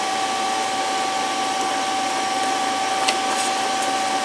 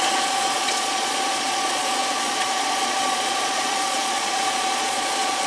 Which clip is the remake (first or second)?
second